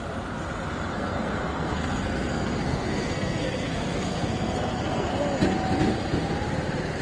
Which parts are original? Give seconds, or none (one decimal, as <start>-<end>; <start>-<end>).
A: 0.0-0.9; 5.1-7.0